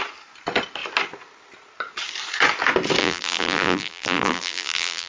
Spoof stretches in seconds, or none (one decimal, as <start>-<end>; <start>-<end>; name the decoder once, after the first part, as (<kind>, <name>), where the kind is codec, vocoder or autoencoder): 3.0-5.1 (vocoder, BigVGAN v2)